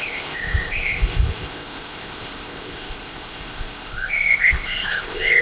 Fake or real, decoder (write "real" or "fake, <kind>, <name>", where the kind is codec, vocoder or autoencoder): fake, codec, ZipCodec